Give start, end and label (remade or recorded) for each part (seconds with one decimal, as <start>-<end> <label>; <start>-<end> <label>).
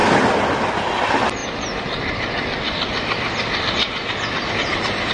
0.0-5.1 recorded